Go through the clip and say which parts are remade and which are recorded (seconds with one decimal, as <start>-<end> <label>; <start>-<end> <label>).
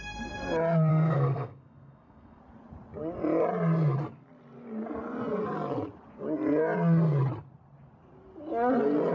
0.0-0.9 recorded; 0.9-2.4 remade; 2.4-9.1 recorded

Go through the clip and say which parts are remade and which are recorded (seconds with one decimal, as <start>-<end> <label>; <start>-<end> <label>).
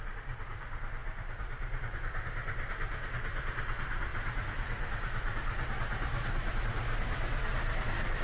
0.0-1.0 recorded; 1.0-2.0 remade; 2.0-8.2 recorded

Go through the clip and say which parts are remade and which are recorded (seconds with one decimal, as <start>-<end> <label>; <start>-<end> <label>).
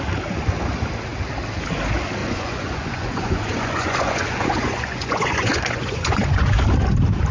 0.0-2.2 recorded; 2.2-6.6 remade; 6.6-7.3 recorded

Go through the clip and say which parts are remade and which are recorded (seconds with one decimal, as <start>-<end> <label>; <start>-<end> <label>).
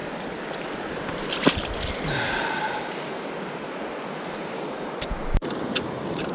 0.0-2.3 remade; 2.3-6.3 recorded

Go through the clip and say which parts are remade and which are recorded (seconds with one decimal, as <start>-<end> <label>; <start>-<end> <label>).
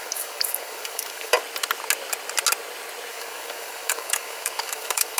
0.0-1.4 remade; 1.4-3.1 recorded; 3.1-5.2 remade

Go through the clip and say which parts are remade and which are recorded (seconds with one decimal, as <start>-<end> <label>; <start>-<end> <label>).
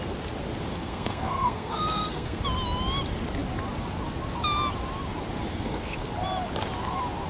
0.0-0.7 recorded; 0.7-2.4 remade; 2.4-5.5 recorded; 5.5-6.1 remade; 6.1-7.3 recorded